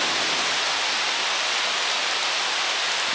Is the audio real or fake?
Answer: real